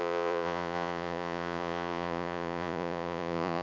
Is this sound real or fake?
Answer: fake